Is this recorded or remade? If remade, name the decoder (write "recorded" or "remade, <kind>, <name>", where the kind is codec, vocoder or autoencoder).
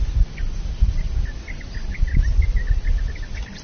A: recorded